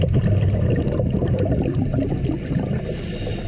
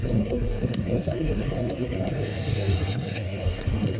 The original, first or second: first